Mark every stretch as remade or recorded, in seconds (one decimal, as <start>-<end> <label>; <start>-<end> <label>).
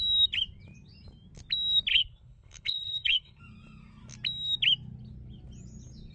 0.0-1.9 recorded; 1.9-3.4 remade; 3.4-6.1 recorded